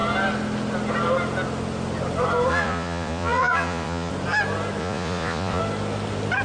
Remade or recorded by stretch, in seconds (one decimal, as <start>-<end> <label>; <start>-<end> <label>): 0.0-2.5 recorded; 2.5-4.1 remade; 4.1-4.8 recorded; 4.8-5.6 remade; 5.6-6.4 recorded